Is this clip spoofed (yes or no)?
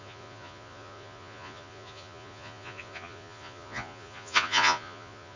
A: yes